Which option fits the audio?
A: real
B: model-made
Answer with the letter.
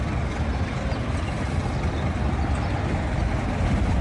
A